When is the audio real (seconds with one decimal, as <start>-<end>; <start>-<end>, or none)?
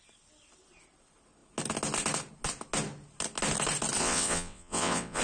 0.0-4.0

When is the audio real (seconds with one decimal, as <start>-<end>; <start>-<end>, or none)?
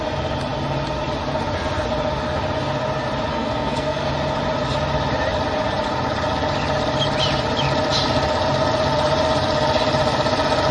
0.0-3.3; 4.1-10.7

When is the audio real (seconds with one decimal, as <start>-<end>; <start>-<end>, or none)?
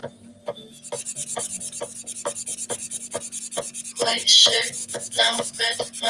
0.0-4.8; 5.6-6.1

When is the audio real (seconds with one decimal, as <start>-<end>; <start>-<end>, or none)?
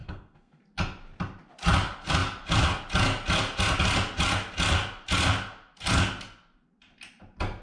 0.6-7.6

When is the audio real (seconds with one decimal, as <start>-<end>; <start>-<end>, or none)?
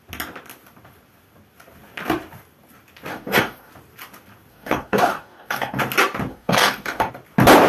0.0-3.1; 3.7-4.5; 5.8-6.3; 7.1-7.7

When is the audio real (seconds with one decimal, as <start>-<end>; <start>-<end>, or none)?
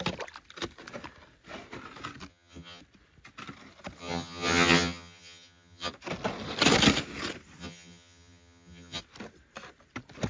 0.0-2.3; 2.8-4.0; 5.9-7.6; 9.0-10.3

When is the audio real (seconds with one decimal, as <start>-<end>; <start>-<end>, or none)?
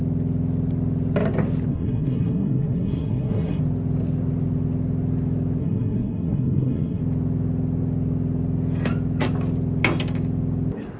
0.0-1.7; 3.6-5.6; 7.0-11.0